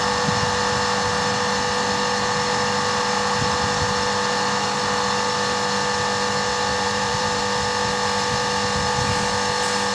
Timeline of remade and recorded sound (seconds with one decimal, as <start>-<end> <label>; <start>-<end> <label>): 0.0-6.7 recorded; 6.7-7.4 remade; 7.4-9.9 recorded

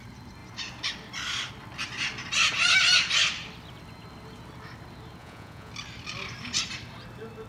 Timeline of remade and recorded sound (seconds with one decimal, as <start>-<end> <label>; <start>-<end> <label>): 0.0-5.2 recorded; 5.2-5.7 remade; 5.7-7.5 recorded

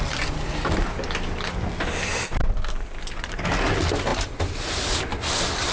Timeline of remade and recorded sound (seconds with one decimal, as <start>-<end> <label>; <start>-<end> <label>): 0.0-5.7 recorded

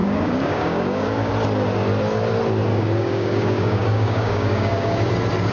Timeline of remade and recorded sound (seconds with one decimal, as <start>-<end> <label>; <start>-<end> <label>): 0.0-1.3 remade; 1.3-2.7 recorded; 2.7-5.1 remade; 5.1-5.5 recorded

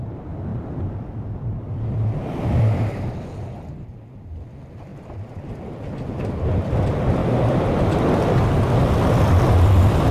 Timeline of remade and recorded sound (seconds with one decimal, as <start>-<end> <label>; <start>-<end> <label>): 0.0-7.2 recorded; 7.2-8.2 remade; 8.2-10.1 recorded

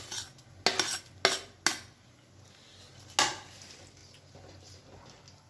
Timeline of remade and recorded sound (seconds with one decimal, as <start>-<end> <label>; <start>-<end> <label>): 0.0-5.5 recorded

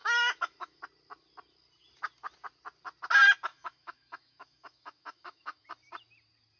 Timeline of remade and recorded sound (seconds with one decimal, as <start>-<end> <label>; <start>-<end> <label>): 0.0-0.8 remade; 0.8-3.5 recorded; 3.5-5.7 remade; 5.7-6.6 recorded